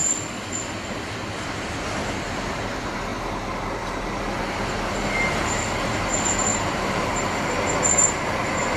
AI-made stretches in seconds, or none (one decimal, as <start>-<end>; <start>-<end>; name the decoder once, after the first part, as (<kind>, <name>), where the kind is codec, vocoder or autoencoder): 6.5-7.5 (vocoder, BigVGAN v2)